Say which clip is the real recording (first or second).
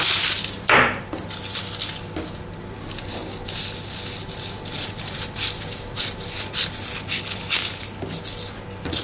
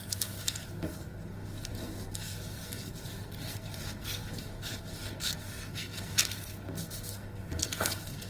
first